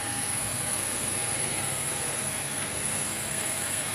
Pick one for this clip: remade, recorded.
remade